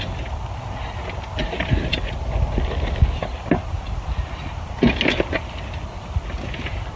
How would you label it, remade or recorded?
recorded